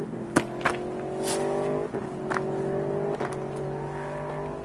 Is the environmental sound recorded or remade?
recorded